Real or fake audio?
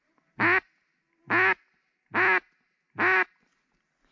real